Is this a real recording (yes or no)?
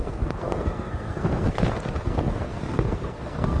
no